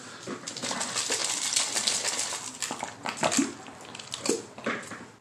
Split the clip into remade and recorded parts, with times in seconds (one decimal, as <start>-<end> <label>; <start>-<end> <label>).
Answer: 0.0-5.2 recorded